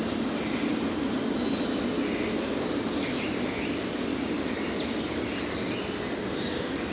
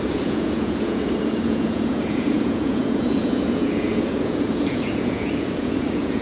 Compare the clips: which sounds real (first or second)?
first